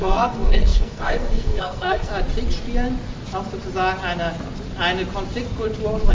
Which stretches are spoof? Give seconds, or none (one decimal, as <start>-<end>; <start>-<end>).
0.0-2.1